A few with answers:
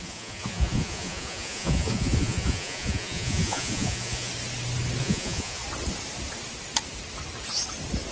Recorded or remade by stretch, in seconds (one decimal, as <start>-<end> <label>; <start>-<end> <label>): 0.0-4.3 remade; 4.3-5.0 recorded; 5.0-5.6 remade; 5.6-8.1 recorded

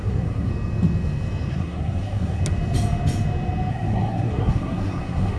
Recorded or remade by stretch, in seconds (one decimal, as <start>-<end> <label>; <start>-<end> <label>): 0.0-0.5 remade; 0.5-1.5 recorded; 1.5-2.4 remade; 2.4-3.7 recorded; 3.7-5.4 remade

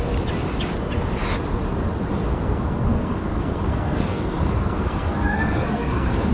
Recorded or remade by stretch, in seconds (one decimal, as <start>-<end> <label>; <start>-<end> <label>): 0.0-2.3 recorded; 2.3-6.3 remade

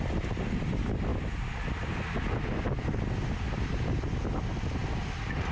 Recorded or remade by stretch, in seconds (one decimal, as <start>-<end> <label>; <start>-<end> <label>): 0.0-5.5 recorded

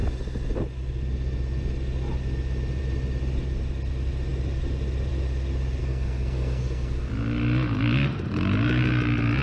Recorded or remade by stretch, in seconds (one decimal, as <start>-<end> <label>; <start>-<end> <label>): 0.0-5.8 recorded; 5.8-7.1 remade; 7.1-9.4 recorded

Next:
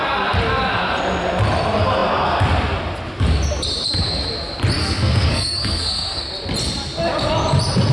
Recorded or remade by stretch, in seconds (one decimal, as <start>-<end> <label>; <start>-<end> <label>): 0.0-4.8 recorded; 4.8-6.2 remade; 6.2-7.9 recorded